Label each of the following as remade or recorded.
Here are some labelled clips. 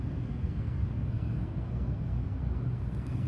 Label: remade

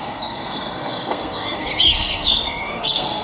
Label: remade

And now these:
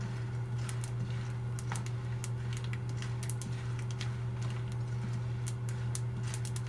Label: recorded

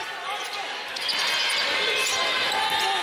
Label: recorded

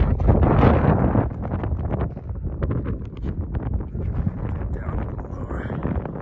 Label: recorded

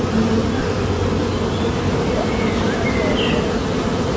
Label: recorded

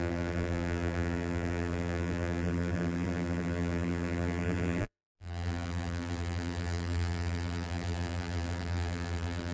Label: remade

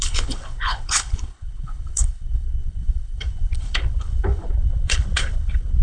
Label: remade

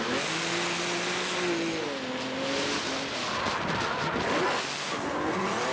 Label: recorded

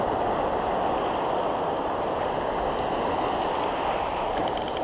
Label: recorded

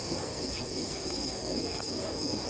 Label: remade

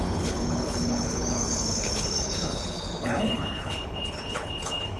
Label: remade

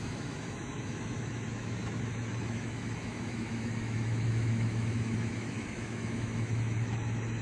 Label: remade